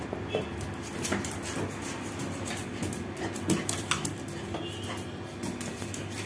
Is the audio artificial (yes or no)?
no